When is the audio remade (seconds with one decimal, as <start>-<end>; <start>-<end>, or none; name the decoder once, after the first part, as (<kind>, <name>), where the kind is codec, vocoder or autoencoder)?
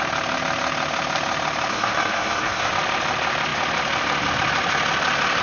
1.7-2.7 (codec, SNAC)